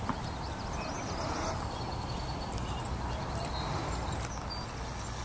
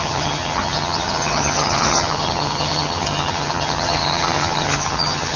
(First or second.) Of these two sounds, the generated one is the second